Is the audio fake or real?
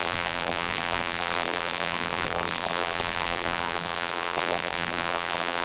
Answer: fake